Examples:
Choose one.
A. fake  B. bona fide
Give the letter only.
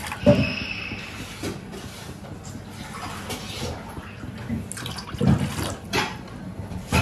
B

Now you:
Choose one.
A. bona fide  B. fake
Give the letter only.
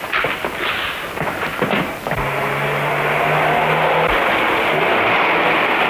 A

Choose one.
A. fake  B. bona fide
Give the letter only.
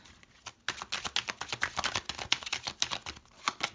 B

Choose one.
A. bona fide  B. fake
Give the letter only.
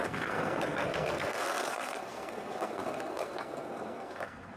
B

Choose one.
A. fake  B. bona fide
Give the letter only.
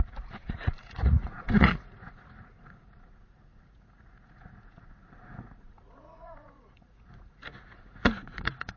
A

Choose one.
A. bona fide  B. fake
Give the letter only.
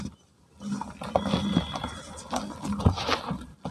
A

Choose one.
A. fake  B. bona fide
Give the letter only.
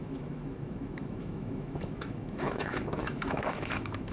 A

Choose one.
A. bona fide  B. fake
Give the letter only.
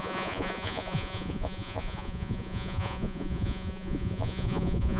B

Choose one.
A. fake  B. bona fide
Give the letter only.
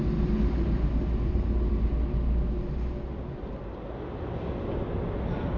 B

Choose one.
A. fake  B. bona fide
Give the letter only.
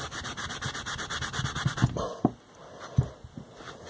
B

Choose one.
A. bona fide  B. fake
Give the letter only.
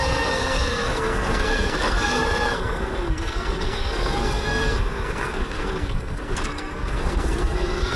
B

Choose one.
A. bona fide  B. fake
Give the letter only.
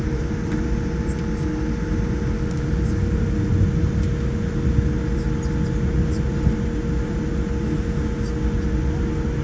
A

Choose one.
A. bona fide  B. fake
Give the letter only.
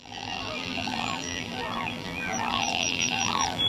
B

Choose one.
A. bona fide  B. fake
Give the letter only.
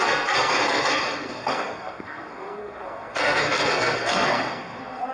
B